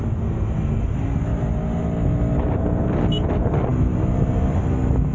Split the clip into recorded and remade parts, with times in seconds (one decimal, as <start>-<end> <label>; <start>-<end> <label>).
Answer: 0.0-5.1 recorded